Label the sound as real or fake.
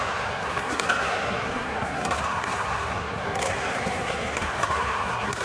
fake